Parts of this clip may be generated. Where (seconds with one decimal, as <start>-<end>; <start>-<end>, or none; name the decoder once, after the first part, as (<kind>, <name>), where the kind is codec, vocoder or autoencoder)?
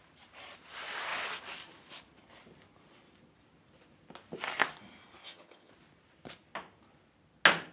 5.2-5.7 (vocoder, HiFi-GAN)